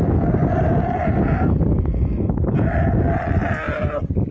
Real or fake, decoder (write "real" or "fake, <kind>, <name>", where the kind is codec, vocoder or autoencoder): real